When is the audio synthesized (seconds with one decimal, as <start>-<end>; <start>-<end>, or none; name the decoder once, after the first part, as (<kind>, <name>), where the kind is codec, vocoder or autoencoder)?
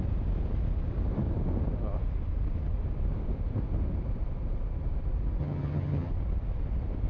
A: 5.4-6.1 (vocoder, HiFi-GAN)